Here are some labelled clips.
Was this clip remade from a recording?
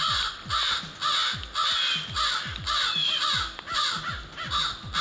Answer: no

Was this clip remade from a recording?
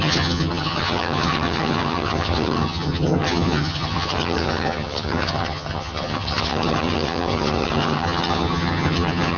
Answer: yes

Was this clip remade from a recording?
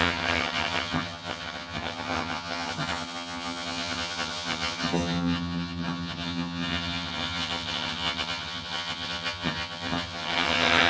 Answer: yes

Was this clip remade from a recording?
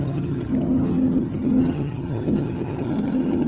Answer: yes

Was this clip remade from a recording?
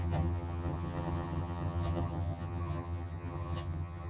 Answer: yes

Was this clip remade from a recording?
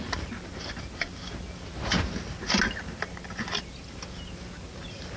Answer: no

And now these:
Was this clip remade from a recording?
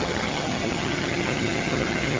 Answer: yes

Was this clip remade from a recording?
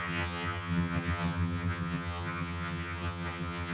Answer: yes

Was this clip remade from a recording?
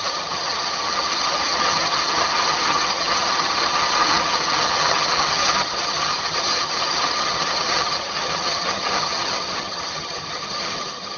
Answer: yes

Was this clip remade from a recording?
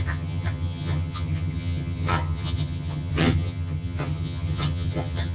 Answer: yes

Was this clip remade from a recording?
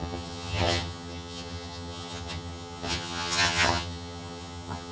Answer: yes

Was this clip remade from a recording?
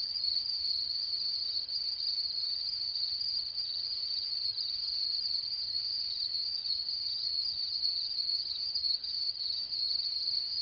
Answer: yes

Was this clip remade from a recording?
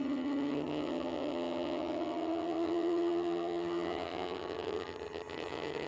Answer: yes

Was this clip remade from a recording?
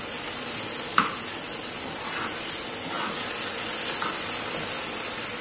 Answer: no